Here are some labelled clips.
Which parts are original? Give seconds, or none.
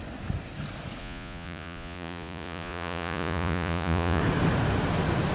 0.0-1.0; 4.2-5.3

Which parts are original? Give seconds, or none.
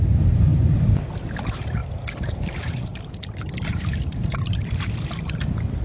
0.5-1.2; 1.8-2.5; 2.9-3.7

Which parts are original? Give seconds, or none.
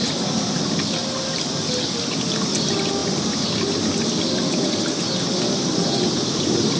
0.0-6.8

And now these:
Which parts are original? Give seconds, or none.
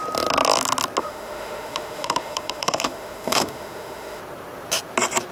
0.0-1.0; 4.2-5.3